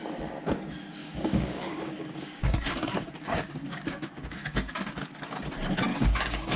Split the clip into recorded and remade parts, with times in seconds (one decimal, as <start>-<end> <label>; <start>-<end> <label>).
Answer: 0.0-1.0 recorded; 1.0-5.0 remade; 5.0-5.9 recorded; 5.9-6.6 remade